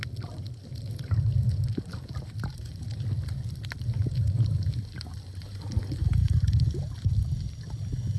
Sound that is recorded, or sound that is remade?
recorded